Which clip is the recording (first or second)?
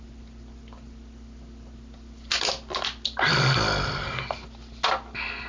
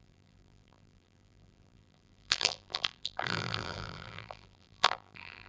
first